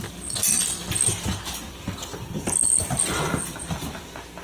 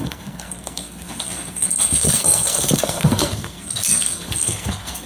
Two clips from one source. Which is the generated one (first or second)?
second